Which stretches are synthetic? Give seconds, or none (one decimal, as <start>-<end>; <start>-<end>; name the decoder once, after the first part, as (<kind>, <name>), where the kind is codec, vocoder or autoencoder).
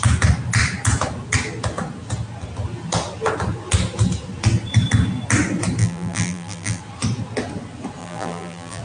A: 5.8-6.8 (vocoder, BigVGAN v2); 8.0-8.8